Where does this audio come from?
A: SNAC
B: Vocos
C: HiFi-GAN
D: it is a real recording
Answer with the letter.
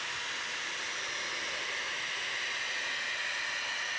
D